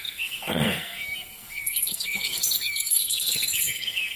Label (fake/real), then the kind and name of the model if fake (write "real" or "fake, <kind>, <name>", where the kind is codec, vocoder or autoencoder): fake, codec, SNAC